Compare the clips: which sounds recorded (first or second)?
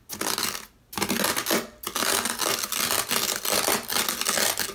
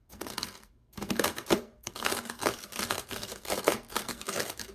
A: first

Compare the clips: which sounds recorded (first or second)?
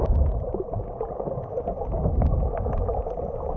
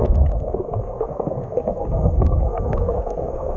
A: first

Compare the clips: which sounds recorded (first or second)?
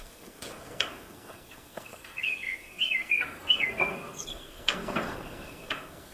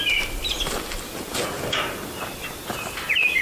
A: second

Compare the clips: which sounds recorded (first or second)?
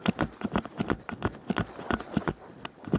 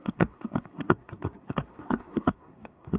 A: first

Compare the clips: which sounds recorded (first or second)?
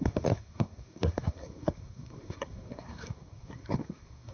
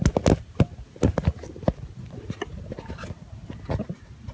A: second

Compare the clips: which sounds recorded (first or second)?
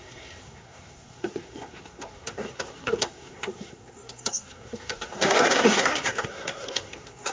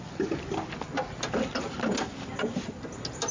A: second